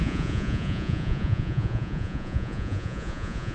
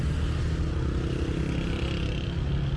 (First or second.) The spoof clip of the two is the first